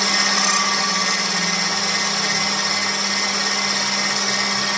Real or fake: real